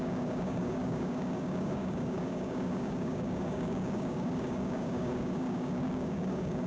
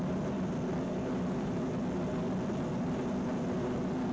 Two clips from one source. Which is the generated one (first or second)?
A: first